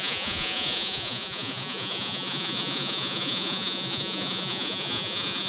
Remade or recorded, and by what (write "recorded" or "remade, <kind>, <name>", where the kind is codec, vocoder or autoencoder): remade, vocoder, Vocos